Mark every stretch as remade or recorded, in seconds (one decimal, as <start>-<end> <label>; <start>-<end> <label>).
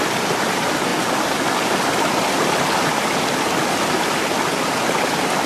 0.0-5.5 recorded